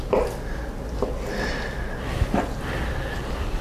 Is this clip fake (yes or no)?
no